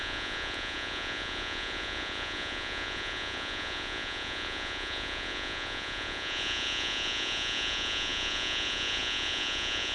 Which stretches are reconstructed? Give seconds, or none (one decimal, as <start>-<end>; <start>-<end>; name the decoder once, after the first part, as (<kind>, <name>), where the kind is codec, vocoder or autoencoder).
0.0-9.9 (vocoder, Vocos)